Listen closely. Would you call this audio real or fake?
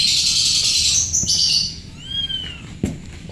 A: real